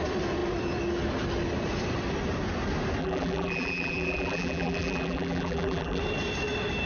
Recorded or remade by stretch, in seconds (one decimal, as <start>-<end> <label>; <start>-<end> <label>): 0.0-3.0 recorded; 3.0-6.0 remade; 6.0-6.9 recorded